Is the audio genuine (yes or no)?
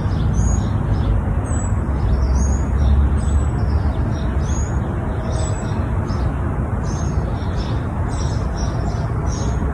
yes